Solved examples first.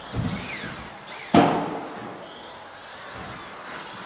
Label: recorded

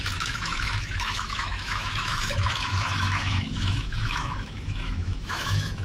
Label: remade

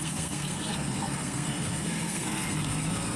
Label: remade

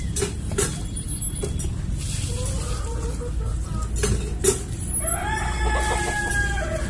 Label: recorded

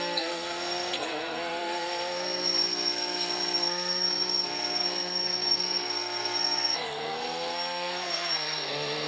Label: remade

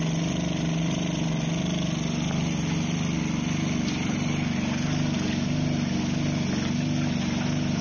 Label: recorded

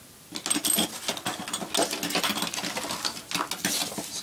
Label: recorded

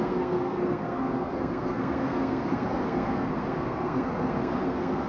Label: remade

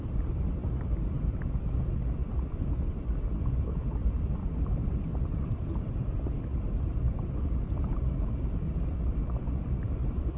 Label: remade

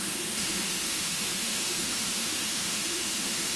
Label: remade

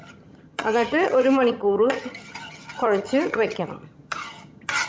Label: remade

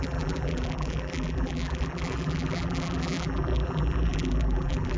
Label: remade